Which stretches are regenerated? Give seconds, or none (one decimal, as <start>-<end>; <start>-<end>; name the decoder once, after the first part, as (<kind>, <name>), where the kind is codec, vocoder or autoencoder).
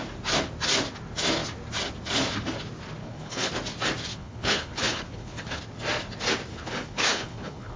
3.0-3.5 (codec, HILCodec); 4.1-5.6; 6.5-7.8